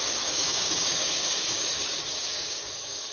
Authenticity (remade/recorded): remade